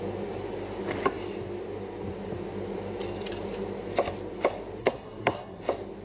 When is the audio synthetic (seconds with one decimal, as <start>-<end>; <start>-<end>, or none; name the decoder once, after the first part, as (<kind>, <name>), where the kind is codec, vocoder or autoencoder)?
4.8-5.6 (codec, SNAC)